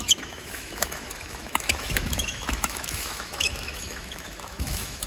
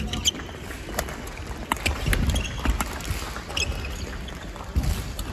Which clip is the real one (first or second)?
second